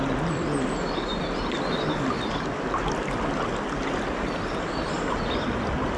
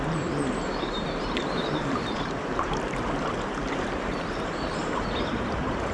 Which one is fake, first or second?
second